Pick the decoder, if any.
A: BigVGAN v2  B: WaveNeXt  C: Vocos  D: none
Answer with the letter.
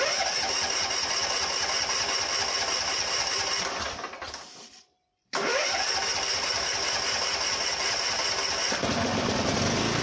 A